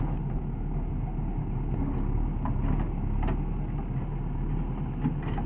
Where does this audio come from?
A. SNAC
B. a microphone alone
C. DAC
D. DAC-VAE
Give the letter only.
B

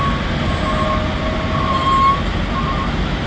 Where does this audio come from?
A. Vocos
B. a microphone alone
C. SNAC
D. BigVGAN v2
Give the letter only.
B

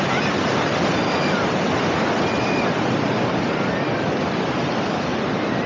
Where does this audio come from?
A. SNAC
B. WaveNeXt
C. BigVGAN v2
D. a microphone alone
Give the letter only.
C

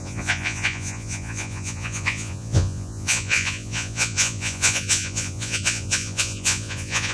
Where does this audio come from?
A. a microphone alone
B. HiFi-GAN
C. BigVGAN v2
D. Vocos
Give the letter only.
D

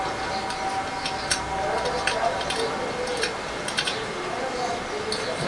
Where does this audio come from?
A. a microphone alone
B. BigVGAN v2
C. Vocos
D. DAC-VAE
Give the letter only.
A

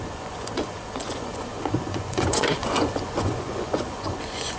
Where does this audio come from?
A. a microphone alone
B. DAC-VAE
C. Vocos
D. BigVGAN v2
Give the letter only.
C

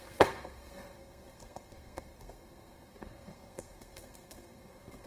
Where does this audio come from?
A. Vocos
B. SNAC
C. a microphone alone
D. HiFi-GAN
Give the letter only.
B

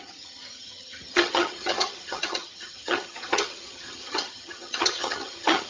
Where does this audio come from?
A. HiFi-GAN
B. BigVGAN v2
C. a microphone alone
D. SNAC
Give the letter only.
A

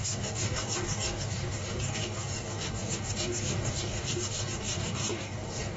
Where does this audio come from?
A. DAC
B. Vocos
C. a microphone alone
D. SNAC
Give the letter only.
A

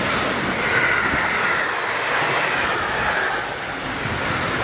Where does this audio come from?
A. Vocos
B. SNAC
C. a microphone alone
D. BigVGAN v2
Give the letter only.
C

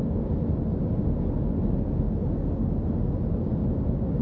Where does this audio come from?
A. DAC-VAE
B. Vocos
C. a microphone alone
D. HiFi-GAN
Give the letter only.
C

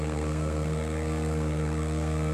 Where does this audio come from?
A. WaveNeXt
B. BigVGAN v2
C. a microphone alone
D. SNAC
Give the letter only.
D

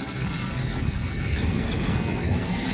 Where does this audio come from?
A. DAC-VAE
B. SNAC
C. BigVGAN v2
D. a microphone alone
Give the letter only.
B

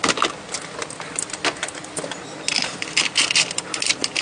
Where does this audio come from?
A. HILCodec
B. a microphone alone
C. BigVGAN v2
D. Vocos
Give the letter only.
B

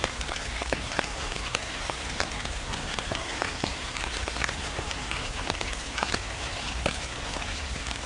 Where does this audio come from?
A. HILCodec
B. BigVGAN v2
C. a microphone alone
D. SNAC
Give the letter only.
D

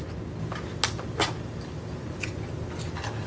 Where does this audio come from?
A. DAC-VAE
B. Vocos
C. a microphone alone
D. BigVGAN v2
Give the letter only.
C